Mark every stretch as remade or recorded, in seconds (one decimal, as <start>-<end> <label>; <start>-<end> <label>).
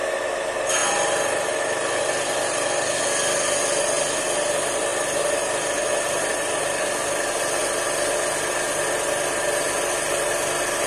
0.0-0.8 recorded; 0.8-3.0 remade; 3.0-10.9 recorded